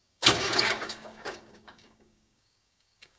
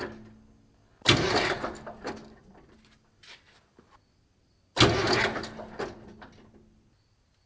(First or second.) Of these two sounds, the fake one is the first